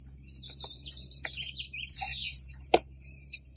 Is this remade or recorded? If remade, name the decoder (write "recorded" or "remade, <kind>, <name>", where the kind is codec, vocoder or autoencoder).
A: remade, vocoder, BigVGAN v2